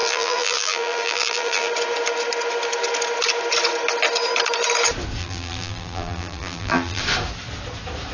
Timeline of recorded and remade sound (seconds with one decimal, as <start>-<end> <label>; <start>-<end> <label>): 0.0-1.7 remade; 1.7-5.2 recorded; 5.2-7.0 remade; 7.0-8.1 recorded